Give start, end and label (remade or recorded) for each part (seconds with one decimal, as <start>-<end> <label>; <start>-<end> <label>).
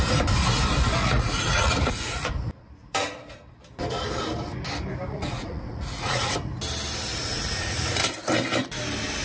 0.0-1.0 recorded; 1.0-2.3 remade; 2.3-5.1 recorded; 5.1-6.2 remade; 6.2-7.1 recorded; 7.1-8.0 remade; 8.0-9.2 recorded